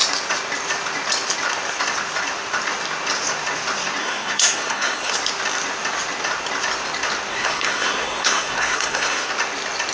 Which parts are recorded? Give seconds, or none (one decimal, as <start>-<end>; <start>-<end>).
0.0-4.0; 5.1-7.3; 9.3-9.9